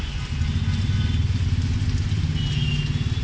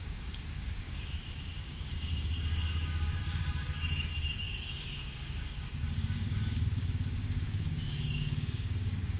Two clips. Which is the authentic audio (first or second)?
first